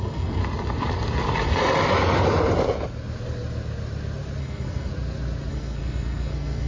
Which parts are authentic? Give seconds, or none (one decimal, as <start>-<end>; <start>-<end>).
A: 0.4-4.4; 4.9-5.5